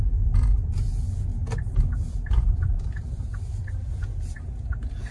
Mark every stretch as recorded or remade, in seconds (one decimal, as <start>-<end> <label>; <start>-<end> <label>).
0.0-1.3 remade; 1.3-1.9 recorded; 1.9-3.3 remade; 3.3-3.8 recorded; 3.8-5.1 remade